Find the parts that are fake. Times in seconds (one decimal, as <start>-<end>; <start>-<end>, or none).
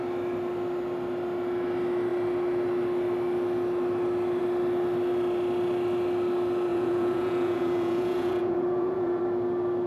6.7-9.2